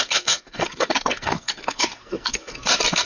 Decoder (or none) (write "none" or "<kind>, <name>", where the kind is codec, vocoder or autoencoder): codec, SNAC